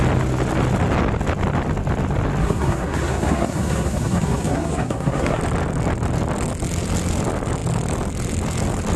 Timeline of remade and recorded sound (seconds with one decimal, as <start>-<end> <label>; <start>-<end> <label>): 0.0-2.4 recorded; 2.4-5.4 remade; 5.4-9.0 recorded